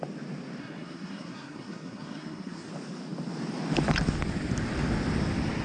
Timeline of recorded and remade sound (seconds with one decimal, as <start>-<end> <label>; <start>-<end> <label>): 0.0-0.6 recorded; 0.6-2.7 remade; 2.7-5.6 recorded